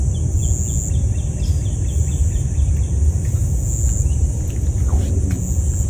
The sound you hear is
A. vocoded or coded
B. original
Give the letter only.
B